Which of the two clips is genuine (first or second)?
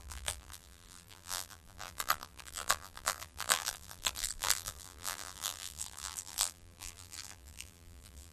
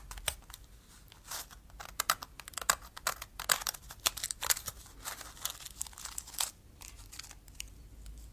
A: second